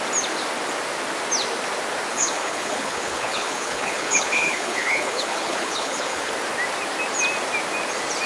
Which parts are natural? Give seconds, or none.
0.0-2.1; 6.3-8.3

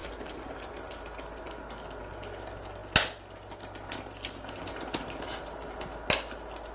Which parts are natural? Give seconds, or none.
0.0-6.7

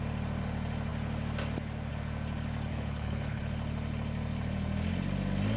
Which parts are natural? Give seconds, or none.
0.0-2.7; 3.4-5.6

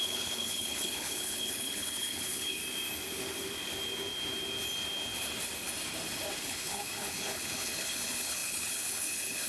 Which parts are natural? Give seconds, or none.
2.6-6.4

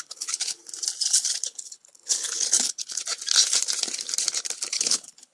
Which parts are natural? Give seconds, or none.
0.6-1.1; 3.0-4.7

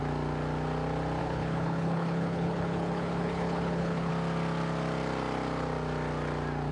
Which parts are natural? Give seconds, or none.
0.0-1.2; 4.1-6.7

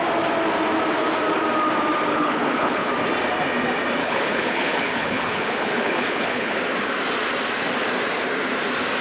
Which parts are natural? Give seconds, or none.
0.0-2.1; 2.9-4.0; 6.6-9.0